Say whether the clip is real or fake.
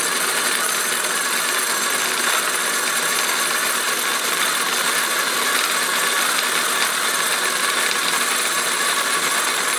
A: real